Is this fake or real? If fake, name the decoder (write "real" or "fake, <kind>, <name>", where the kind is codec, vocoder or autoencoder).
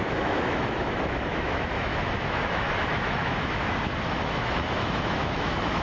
fake, autoencoder, DAC-VAE